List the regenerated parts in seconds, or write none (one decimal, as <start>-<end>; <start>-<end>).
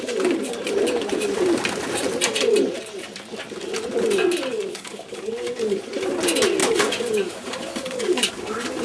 4.5-5.9; 6.6-8.3